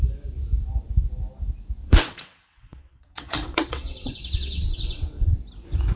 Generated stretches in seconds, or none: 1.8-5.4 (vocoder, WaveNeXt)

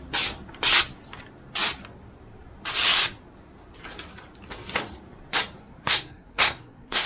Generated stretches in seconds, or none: 5.6-7.1 (codec, SNAC)